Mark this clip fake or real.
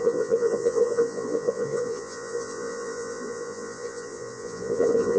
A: fake